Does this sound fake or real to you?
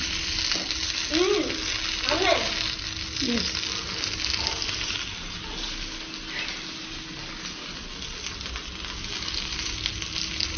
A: real